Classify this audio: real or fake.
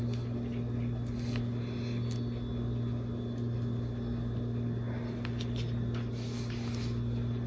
real